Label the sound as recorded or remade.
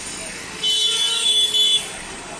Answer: remade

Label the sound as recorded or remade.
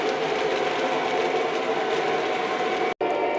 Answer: recorded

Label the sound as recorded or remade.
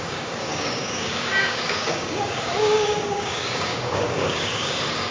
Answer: remade